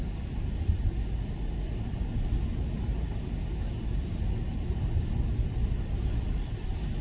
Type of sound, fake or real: real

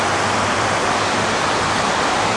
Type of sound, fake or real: fake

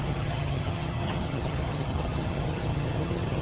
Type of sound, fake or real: fake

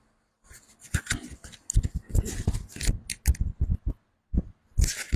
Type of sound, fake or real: real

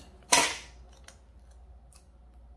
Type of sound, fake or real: real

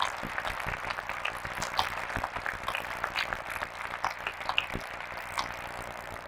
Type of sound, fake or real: real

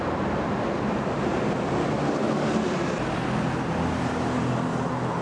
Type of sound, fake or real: real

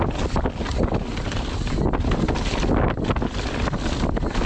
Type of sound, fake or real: real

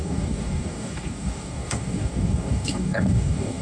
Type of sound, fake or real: fake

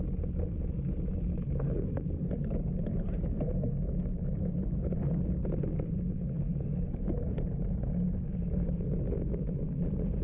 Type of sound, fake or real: real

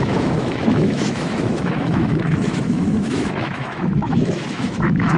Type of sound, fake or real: fake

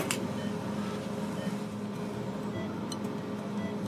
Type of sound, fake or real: real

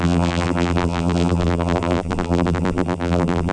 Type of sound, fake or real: fake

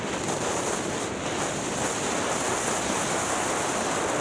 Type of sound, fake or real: real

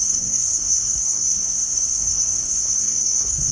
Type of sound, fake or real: fake